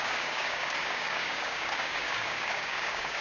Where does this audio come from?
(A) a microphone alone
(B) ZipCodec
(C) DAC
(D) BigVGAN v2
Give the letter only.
C